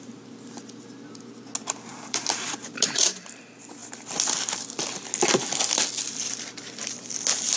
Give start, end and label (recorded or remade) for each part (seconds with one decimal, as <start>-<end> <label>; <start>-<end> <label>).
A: 0.0-1.9 recorded; 1.9-3.1 remade; 3.1-7.6 recorded